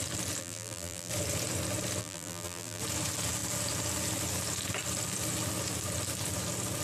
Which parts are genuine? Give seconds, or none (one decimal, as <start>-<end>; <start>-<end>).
0.0-0.4; 1.1-2.0; 2.8-6.8